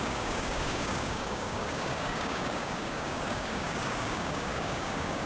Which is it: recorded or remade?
remade